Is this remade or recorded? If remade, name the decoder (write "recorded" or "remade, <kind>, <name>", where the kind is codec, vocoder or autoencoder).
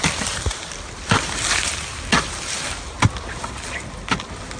recorded